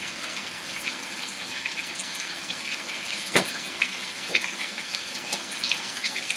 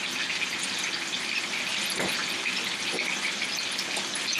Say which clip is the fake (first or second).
first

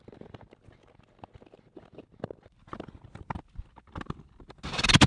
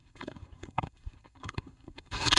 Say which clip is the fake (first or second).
second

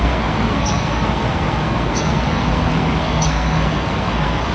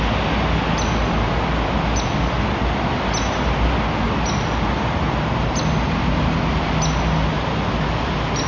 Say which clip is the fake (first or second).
first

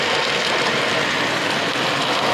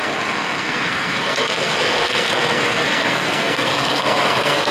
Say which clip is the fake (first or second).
second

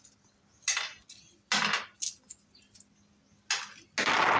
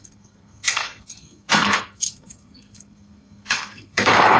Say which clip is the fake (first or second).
second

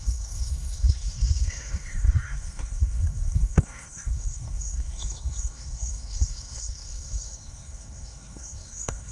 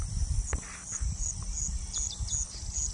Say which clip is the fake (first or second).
first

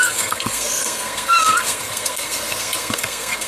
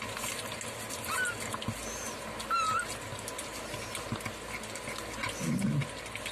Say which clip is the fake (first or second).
first